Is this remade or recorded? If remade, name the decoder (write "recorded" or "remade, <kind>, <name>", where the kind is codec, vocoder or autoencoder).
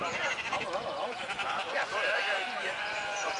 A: remade, vocoder, Vocos